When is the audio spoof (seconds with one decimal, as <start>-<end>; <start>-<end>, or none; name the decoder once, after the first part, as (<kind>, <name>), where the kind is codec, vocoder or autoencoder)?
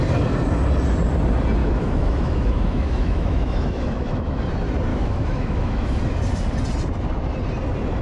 1.6-4.4 (autoencoder, DAC-VAE); 4.9-6.0